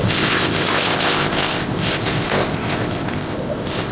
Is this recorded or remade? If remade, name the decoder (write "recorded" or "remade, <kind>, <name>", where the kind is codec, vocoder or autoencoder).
remade, codec, ZipCodec